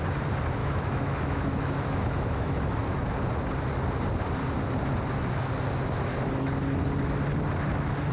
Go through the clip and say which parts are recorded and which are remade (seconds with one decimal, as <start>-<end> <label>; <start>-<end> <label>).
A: 0.0-0.6 recorded; 0.6-3.0 remade; 3.0-8.1 recorded